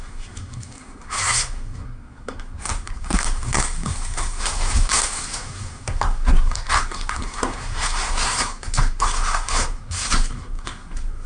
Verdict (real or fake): fake